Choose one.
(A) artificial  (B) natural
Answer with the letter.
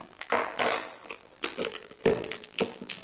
A